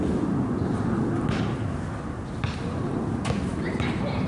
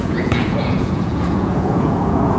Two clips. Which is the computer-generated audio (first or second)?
second